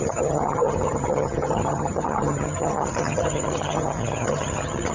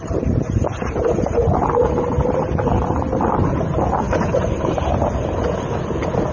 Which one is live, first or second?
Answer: second